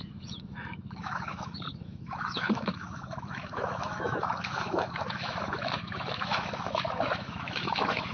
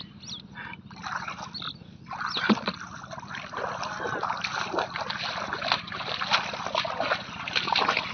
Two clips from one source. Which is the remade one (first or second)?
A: first